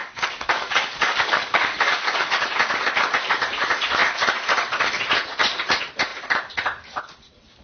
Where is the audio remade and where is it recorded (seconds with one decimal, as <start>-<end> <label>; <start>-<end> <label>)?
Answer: 0.0-2.4 remade; 2.4-7.6 recorded

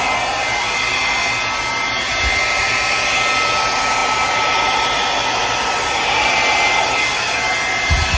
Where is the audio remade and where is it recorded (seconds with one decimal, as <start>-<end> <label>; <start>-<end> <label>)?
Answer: 0.0-8.2 recorded

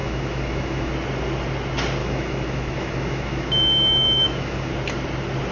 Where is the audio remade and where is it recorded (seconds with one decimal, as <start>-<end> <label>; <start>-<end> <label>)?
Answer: 0.0-0.9 remade; 0.9-2.0 recorded; 2.0-4.7 remade; 4.7-5.5 recorded

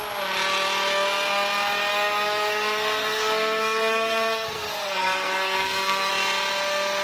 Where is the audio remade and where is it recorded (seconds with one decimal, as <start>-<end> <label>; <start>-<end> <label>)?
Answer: 0.0-1.9 recorded; 1.9-6.1 remade; 6.1-7.0 recorded